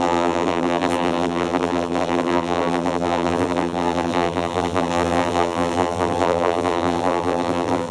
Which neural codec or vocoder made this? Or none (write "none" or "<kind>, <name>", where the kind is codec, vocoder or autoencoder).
vocoder, BigVGAN v2